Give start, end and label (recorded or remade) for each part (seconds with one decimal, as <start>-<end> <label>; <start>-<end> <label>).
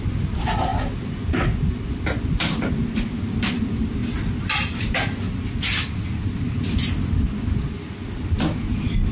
0.0-9.1 recorded